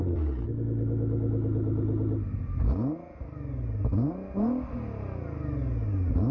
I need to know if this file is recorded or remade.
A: recorded